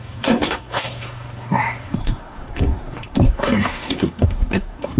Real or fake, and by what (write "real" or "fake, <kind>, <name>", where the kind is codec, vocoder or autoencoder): fake, codec, SNAC